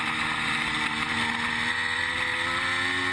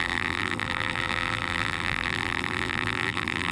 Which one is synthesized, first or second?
second